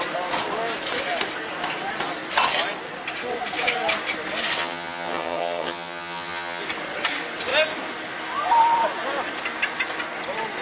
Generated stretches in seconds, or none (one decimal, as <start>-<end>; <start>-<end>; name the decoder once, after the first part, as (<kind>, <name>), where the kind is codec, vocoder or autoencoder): 4.6-6.6 (vocoder, HiFi-GAN)